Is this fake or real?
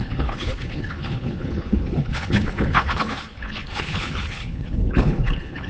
fake